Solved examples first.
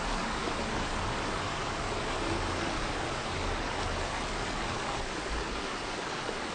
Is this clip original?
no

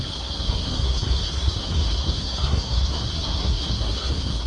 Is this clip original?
no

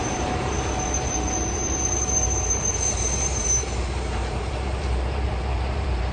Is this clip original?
no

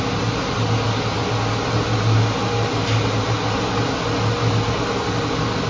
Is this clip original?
yes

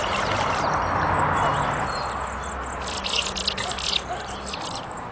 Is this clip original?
yes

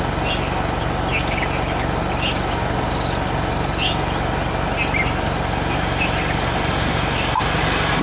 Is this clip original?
yes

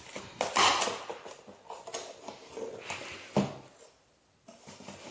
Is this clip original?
yes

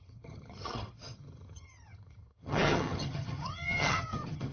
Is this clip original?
no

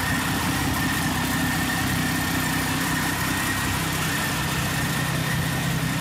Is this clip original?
yes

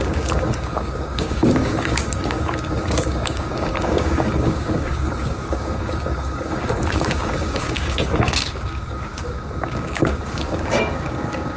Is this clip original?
no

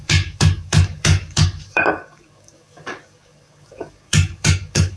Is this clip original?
no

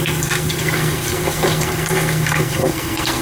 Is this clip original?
no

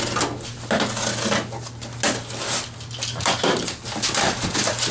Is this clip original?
yes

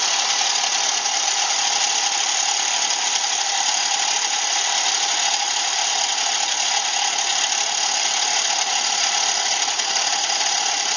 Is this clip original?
yes